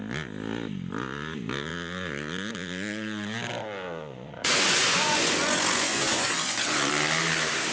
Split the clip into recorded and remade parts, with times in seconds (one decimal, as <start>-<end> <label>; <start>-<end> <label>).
0.0-3.6 recorded; 3.6-6.9 remade; 6.9-7.7 recorded